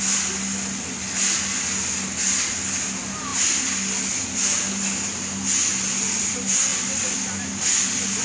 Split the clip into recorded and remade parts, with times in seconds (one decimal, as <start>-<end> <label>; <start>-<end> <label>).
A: 0.0-8.2 recorded